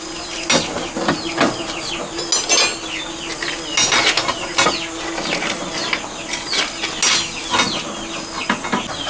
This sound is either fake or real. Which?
real